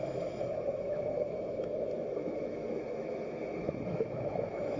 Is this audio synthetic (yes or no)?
yes